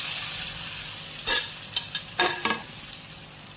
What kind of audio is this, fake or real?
real